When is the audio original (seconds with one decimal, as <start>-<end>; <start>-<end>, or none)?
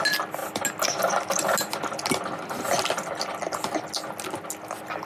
0.0-5.1